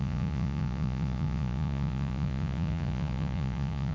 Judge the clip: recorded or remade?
remade